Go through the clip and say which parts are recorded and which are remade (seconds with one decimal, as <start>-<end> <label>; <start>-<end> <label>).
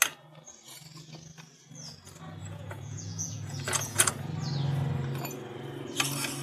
0.0-2.4 recorded; 2.4-4.1 remade; 4.1-6.4 recorded